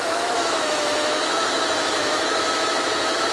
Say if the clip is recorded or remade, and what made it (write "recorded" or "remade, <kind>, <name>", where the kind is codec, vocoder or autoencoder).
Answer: remade, autoencoder, DAC-VAE